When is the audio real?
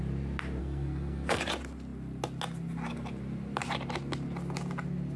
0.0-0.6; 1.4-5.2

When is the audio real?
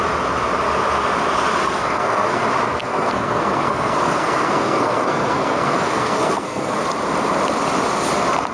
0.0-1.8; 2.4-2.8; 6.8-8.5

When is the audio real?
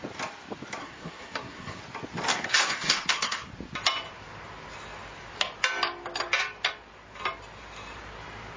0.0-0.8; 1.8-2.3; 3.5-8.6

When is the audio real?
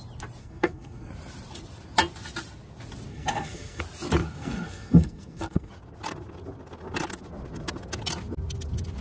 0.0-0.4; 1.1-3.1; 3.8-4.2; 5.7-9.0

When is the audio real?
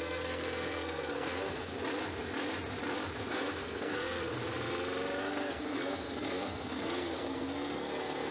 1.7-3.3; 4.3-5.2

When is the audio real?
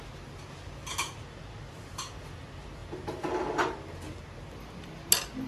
0.0-5.5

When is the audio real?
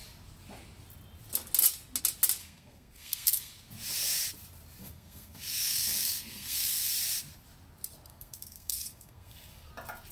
0.0-2.4; 3.5-4.8; 6.9-8.1; 9.7-10.1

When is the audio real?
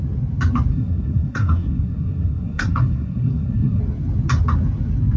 0.0-0.7; 3.8-5.2